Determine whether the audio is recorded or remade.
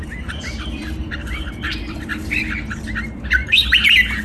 remade